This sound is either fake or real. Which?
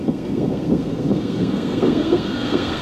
fake